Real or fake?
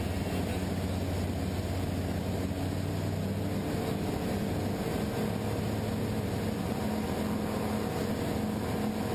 real